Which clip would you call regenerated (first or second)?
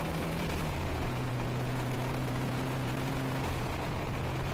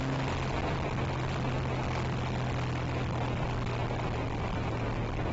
first